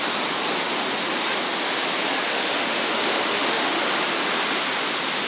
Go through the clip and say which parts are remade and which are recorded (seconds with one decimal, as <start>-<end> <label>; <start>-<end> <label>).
0.0-2.3 recorded; 2.3-3.9 remade; 3.9-5.3 recorded

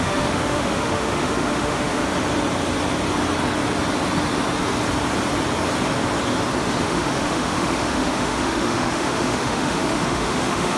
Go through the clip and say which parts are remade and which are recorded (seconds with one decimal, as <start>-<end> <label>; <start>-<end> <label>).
0.0-2.0 remade; 2.0-6.8 recorded; 6.8-10.8 remade